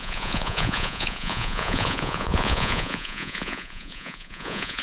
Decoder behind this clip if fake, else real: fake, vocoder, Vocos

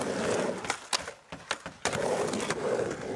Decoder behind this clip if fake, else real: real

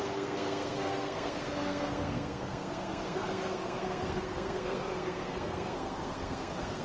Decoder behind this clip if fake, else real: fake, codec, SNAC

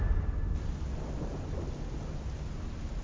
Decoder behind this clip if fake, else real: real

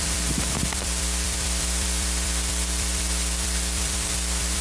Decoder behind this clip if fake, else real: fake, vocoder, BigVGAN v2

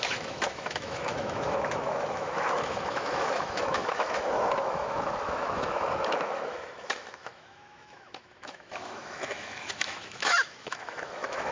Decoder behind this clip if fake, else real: fake, autoencoder, DAC-VAE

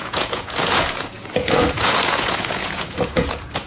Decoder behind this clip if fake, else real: fake, vocoder, Vocos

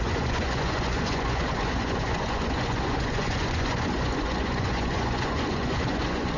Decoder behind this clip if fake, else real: fake, vocoder, Vocos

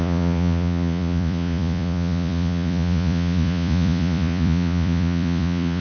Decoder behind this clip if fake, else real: fake, vocoder, Vocos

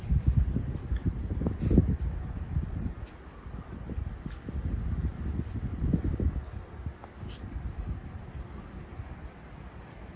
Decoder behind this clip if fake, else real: real